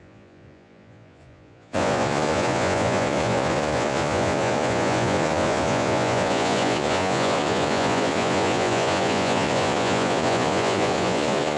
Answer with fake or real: fake